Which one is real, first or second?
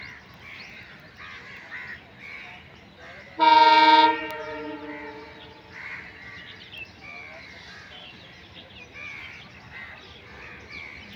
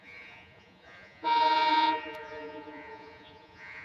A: first